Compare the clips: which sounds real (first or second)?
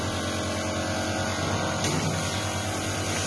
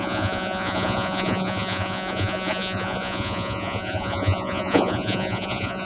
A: first